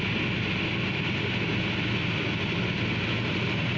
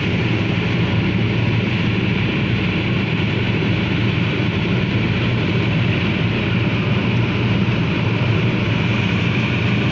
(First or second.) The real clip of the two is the first